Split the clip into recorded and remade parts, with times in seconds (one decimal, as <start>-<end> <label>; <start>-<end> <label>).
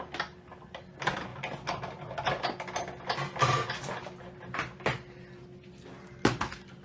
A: 0.0-6.8 recorded